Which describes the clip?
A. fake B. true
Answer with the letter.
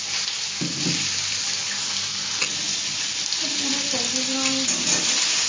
B